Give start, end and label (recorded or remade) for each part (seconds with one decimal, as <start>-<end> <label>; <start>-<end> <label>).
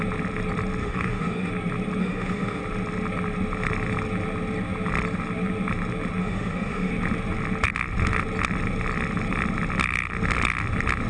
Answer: 0.0-0.8 recorded; 0.8-1.5 remade; 1.5-2.0 recorded; 2.0-2.6 remade; 2.6-6.2 recorded; 6.2-6.9 remade; 6.9-11.1 recorded